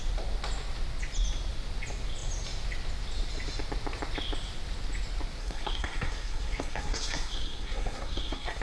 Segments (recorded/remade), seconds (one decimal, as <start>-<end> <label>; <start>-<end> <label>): 0.0-5.4 recorded; 5.4-8.6 remade